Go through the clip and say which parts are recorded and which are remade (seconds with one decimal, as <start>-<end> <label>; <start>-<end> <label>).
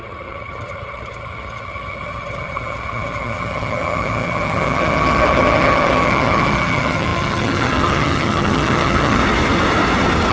0.0-9.2 remade; 9.2-10.3 recorded